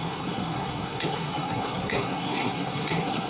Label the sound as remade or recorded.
remade